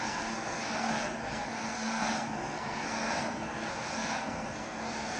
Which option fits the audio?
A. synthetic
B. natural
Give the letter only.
A